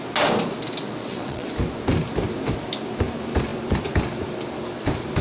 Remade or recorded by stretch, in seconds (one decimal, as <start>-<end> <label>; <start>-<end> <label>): 0.0-1.0 recorded; 1.0-1.5 remade; 1.5-5.2 recorded